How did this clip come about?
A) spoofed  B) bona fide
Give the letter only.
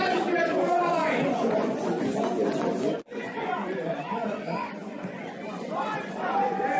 A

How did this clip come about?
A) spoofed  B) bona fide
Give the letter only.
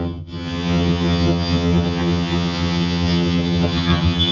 A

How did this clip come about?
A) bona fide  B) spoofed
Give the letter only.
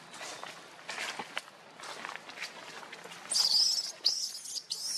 A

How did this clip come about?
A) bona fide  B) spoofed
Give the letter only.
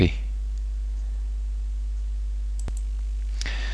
A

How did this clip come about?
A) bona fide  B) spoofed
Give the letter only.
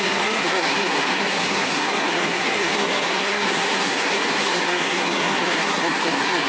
B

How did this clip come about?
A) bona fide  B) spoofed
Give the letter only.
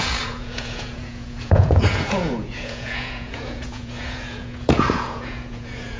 B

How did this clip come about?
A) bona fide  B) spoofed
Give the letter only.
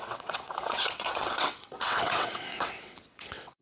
B